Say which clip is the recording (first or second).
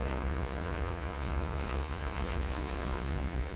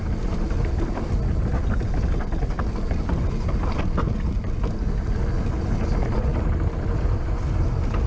second